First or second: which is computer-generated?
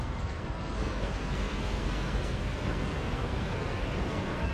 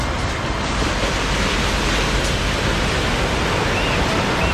first